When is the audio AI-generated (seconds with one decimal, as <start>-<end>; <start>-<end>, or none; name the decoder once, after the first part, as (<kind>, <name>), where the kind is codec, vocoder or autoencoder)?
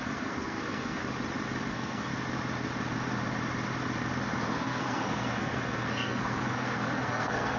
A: 0.0-1.0 (codec, SNAC); 1.7-2.1; 4.5-7.6